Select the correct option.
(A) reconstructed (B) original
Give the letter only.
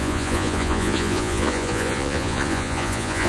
A